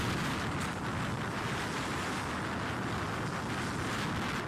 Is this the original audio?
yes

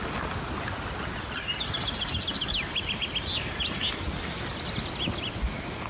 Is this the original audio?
yes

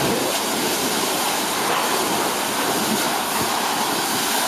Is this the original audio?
yes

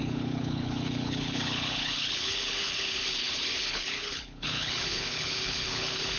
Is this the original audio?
no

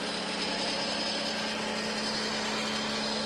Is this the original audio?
yes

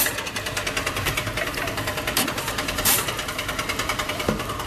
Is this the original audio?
yes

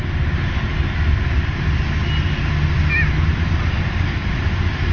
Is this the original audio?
yes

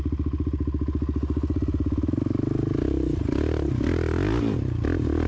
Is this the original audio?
yes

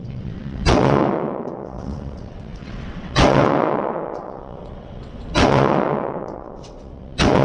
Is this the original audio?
no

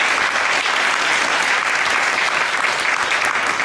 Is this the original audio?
yes